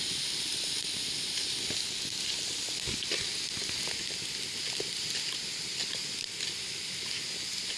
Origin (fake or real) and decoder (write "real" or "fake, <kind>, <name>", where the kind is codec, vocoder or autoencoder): real